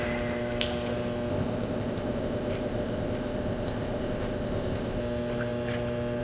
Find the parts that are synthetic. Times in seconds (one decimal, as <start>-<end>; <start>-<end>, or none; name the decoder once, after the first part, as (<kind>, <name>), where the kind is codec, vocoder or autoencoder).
1.3-5.0 (codec, ZipCodec)